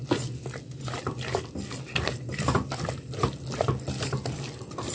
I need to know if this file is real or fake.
real